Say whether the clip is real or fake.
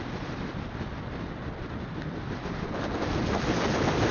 real